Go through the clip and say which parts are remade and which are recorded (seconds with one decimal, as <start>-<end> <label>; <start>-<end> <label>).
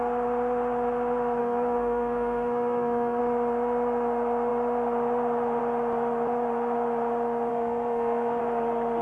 0.0-1.4 recorded; 1.4-3.2 remade; 3.2-7.5 recorded; 7.5-8.4 remade; 8.4-9.0 recorded